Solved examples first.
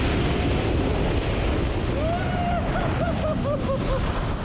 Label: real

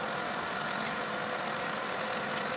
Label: real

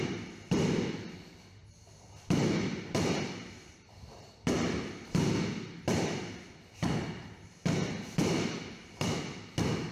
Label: real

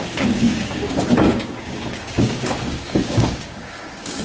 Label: fake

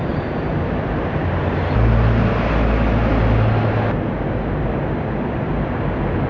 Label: real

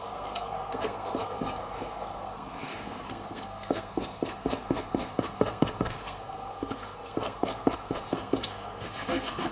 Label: fake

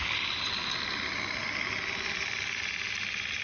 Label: real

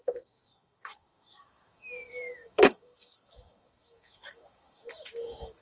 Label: fake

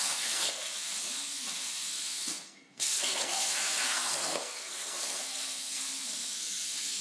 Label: fake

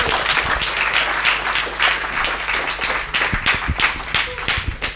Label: real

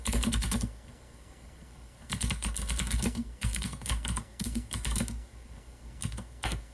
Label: fake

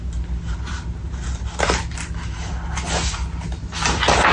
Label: real